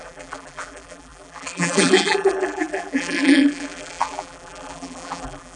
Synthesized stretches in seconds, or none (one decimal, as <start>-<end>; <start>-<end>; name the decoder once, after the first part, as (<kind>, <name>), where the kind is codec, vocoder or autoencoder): 0.0-5.6 (vocoder, BigVGAN v2)